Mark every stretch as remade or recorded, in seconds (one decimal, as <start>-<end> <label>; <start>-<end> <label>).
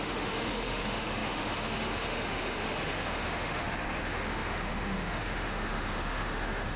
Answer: 0.0-6.8 remade